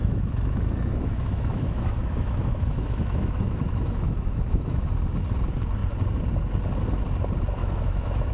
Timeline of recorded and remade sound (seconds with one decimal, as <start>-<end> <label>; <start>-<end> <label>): 0.0-4.8 remade; 4.8-7.6 recorded; 7.6-8.3 remade